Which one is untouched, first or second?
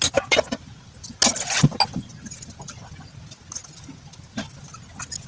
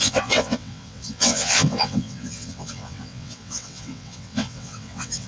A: first